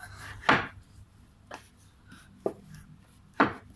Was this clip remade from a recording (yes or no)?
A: no